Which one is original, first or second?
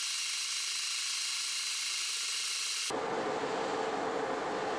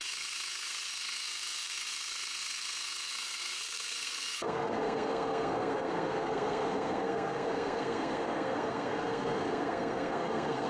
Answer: first